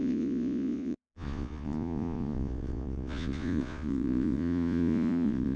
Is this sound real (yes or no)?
no